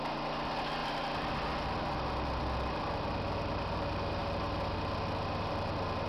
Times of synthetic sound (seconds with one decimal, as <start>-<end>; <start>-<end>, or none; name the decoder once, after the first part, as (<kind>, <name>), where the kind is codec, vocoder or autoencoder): none